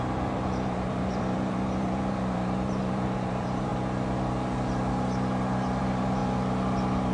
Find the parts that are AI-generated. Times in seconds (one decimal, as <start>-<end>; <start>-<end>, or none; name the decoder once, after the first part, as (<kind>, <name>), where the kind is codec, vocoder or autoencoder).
0.0-3.7 (vocoder, BigVGAN v2); 5.8-6.2